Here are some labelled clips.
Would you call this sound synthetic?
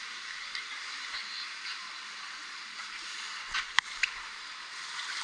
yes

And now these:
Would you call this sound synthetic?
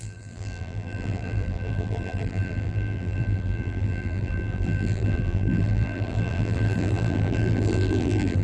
yes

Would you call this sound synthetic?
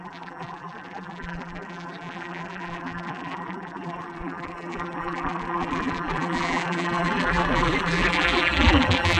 yes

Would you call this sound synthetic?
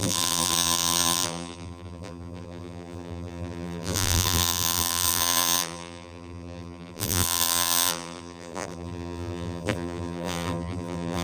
yes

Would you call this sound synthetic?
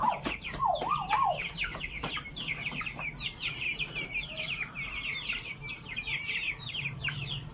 yes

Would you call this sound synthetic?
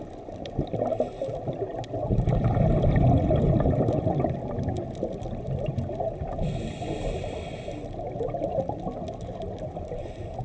no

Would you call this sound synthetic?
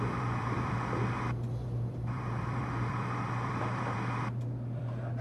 yes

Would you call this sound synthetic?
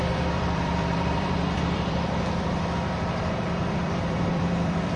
yes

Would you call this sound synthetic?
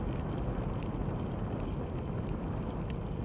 no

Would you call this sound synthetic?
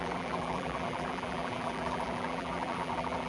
yes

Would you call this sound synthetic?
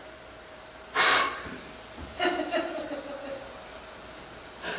yes